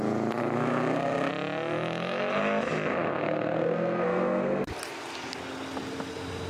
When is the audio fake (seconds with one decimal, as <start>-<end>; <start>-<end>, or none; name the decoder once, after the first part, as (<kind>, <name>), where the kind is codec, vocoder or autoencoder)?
0.4-1.3 (codec, SNAC); 2.9-4.7